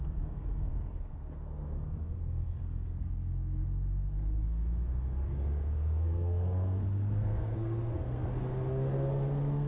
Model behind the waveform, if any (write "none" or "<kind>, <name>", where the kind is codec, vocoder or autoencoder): codec, SNAC